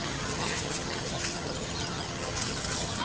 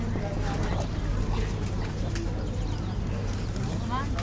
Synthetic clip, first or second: first